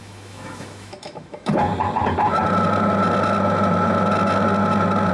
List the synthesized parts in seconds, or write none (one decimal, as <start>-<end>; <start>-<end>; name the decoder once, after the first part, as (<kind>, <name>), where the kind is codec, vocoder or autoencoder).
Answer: 0.0-1.5 (autoencoder, DAC-VAE)